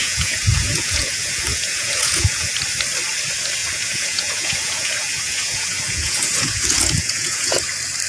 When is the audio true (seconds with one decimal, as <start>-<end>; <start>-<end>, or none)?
2.5-3.6; 7.6-8.1